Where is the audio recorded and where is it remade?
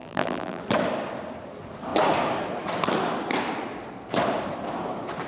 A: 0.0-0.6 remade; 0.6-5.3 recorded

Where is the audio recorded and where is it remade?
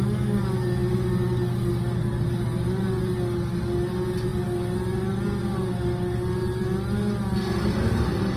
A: 0.0-8.4 recorded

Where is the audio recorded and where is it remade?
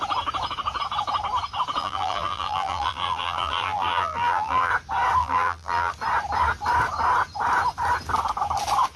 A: 0.0-1.8 recorded; 1.8-4.7 remade; 4.7-5.2 recorded; 5.2-5.9 remade; 5.9-9.0 recorded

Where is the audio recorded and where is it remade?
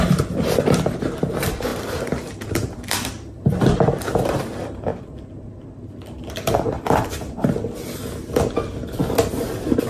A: 0.0-4.9 remade; 4.9-6.2 recorded; 6.2-9.0 remade; 9.0-9.9 recorded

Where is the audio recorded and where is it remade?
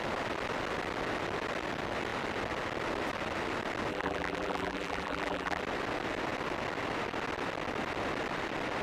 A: 0.0-3.9 recorded; 3.9-5.6 remade; 5.6-8.8 recorded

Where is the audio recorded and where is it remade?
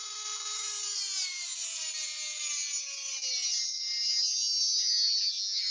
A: 0.0-1.0 remade; 1.0-5.7 recorded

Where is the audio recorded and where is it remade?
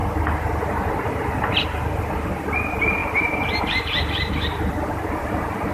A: 0.0-0.9 recorded; 0.9-5.7 remade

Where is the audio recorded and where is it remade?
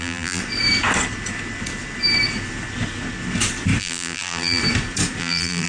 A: 0.0-0.4 remade; 0.4-3.8 recorded; 3.8-4.6 remade; 4.6-5.2 recorded; 5.2-5.7 remade